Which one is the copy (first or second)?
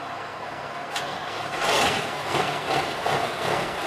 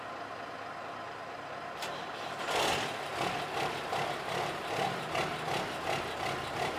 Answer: first